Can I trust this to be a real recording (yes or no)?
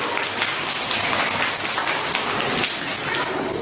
yes